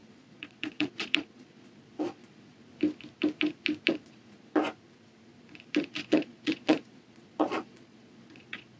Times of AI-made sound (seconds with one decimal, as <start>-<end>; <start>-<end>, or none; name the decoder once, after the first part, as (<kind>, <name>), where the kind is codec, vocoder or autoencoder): 0.0-2.7 (vocoder, Vocos); 3.9-4.6; 5.8-8.8